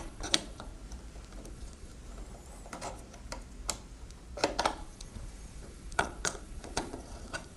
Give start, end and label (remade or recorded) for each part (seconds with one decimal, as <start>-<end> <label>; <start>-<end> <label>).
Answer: 0.0-0.7 remade; 0.7-1.5 recorded; 1.5-1.9 remade; 1.9-4.6 recorded; 4.6-7.6 remade